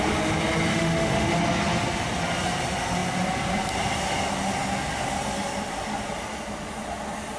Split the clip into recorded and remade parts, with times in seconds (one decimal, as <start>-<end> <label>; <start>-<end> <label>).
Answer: 0.0-0.7 recorded; 0.7-1.3 remade; 1.3-7.4 recorded